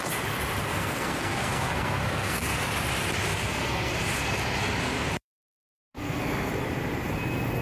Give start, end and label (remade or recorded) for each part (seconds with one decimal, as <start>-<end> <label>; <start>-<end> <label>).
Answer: 0.0-0.6 recorded; 0.6-2.7 remade; 2.7-3.3 recorded; 3.3-3.9 remade; 3.9-5.9 recorded; 5.9-6.5 remade; 6.5-7.6 recorded